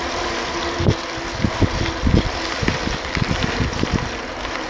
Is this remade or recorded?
recorded